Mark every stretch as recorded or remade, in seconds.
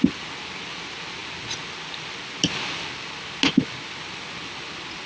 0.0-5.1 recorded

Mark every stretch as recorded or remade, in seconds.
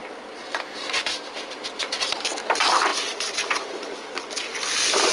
0.0-5.1 recorded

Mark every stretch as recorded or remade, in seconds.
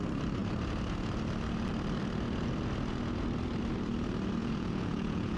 0.0-4.4 recorded; 4.4-5.4 remade